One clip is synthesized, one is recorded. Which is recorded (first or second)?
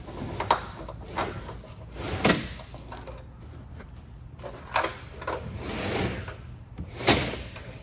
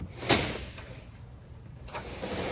first